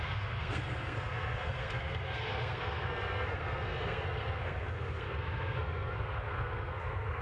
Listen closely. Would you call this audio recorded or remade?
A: remade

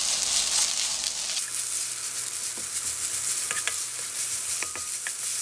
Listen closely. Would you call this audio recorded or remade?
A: recorded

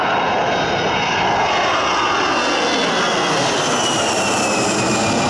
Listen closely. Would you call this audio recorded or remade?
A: recorded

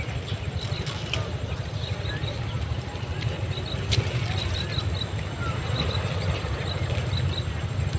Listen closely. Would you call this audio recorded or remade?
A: recorded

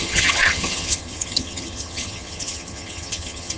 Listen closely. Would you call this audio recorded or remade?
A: remade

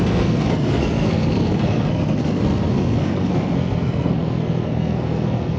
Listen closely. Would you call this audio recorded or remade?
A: remade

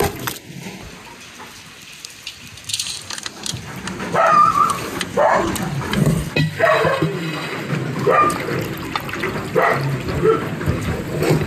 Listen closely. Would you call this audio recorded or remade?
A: recorded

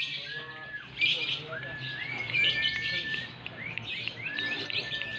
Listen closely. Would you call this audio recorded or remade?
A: remade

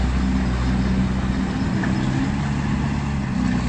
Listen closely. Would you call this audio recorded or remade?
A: recorded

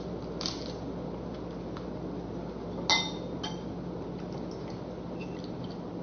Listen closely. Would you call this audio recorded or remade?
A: recorded